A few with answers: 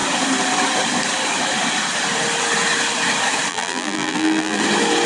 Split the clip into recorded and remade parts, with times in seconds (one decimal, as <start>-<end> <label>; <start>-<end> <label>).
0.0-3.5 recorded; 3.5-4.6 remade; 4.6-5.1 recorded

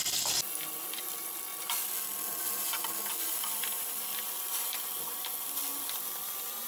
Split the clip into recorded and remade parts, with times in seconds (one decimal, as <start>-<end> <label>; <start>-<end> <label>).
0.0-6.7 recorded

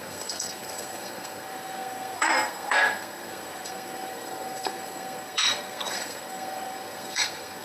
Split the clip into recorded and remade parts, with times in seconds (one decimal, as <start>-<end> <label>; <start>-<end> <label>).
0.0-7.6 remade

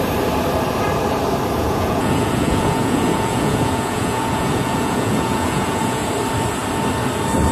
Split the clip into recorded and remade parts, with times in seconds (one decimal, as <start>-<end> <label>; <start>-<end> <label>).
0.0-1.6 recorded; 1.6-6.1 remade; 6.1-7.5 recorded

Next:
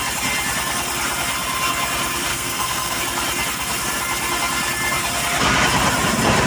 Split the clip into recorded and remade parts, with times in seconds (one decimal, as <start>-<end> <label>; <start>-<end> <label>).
0.0-2.3 recorded; 2.3-3.0 remade; 3.0-6.5 recorded

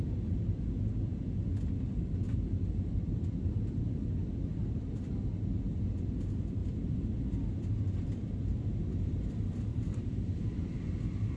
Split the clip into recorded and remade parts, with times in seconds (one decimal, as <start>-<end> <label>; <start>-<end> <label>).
0.0-1.5 recorded; 1.5-5.3 remade; 5.3-6.6 recorded; 6.6-8.7 remade; 8.7-9.7 recorded; 9.7-10.7 remade; 10.7-11.4 recorded

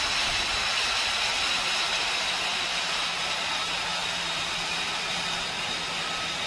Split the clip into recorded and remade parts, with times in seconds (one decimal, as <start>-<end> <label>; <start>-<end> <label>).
0.0-4.0 recorded; 4.0-5.4 remade; 5.4-6.5 recorded